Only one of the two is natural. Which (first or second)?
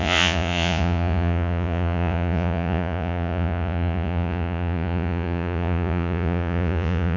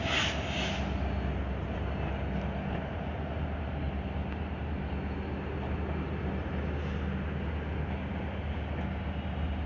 second